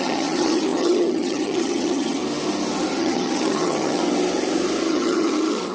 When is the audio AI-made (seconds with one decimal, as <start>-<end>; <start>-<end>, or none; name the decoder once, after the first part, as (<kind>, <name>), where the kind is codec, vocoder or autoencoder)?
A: 0.0-2.2 (vocoder, HiFi-GAN); 3.0-4.0; 4.9-5.7